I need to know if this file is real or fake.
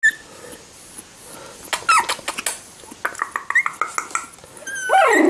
real